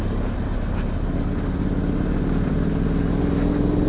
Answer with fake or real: real